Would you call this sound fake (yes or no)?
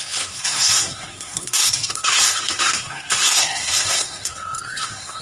yes